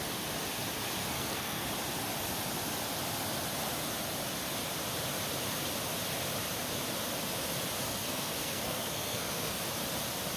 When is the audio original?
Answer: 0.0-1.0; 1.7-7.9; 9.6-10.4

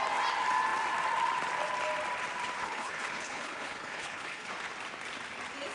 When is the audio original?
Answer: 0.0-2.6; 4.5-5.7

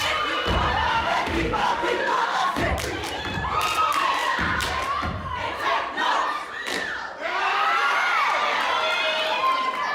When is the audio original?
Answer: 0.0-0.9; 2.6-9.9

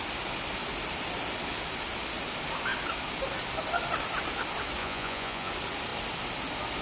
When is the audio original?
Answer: 0.0-4.8; 5.5-6.8

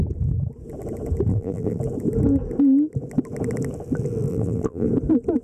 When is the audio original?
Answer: 0.0-1.3; 1.8-4.3; 4.9-5.4